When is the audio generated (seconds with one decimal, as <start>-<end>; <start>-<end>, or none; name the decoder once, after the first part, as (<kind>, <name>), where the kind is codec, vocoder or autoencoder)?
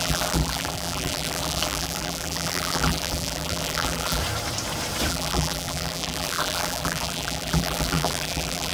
0.0-4.2 (vocoder, BigVGAN v2); 5.1-8.7